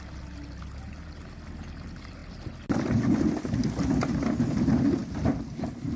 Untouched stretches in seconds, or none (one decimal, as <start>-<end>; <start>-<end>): 0.0-6.0